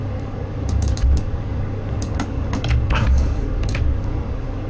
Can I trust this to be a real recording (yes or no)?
no